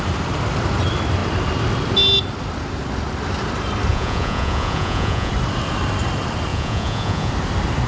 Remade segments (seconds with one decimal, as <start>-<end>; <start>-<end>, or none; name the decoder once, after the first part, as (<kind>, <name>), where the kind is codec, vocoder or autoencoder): 3.9-5.3 (vocoder, Vocos); 6.5-7.3